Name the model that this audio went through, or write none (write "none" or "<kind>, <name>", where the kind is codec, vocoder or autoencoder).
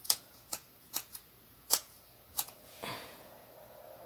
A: vocoder, Vocos